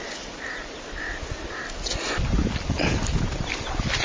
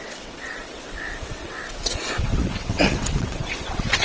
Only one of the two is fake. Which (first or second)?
second